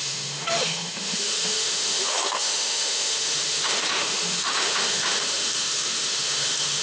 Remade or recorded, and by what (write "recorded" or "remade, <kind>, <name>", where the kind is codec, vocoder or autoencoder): remade, autoencoder, DAC-VAE